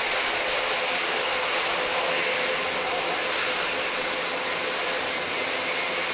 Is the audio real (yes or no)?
yes